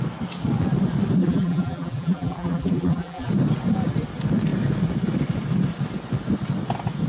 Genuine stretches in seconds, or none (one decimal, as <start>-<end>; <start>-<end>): 0.0-1.2; 3.3-7.1